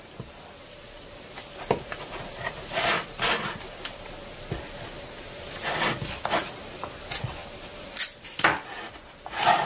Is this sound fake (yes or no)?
no